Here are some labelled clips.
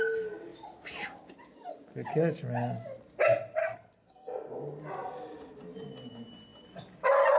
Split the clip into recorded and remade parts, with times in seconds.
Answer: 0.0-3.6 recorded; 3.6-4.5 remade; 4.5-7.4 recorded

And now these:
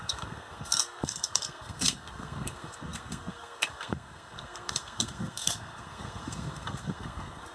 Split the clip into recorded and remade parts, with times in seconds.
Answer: 0.0-7.5 remade

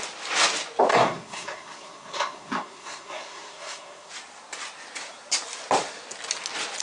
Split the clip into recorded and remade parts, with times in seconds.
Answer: 0.0-0.9 recorded; 0.9-4.1 remade; 4.1-6.8 recorded

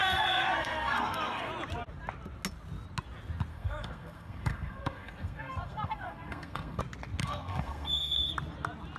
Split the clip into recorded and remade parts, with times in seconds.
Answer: 0.0-1.5 remade; 1.5-3.5 recorded; 3.5-6.8 remade; 6.8-7.2 recorded; 7.2-8.3 remade; 8.3-9.0 recorded

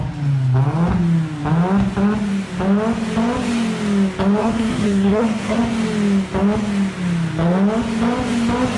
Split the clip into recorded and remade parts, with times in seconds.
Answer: 0.0-4.4 recorded; 4.4-5.6 remade; 5.6-8.8 recorded

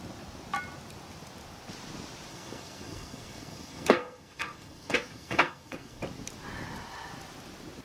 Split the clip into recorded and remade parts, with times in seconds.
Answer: 0.0-2.3 recorded; 2.3-6.0 remade; 6.0-7.8 recorded

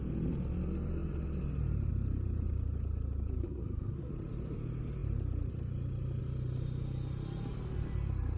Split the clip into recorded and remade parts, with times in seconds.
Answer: 0.0-3.4 recorded; 3.4-4.1 remade; 4.1-8.4 recorded

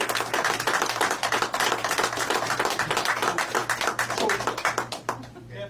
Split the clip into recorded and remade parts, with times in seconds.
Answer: 0.0-5.7 recorded